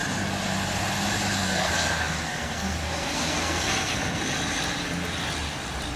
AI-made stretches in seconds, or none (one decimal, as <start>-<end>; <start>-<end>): 1.4-4.2